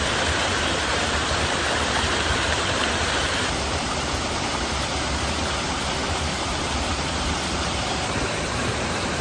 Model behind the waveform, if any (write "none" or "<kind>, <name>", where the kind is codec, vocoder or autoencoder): vocoder, BigVGAN v2